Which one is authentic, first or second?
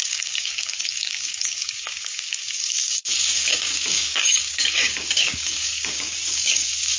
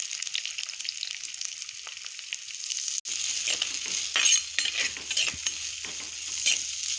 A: second